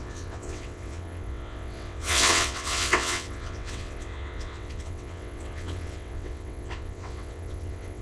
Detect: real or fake fake